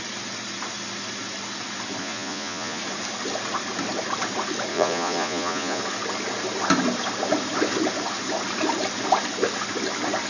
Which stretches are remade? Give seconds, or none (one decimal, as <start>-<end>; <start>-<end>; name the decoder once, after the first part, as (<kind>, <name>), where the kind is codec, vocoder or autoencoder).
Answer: 2.0-2.8 (vocoder, Vocos); 4.7-5.8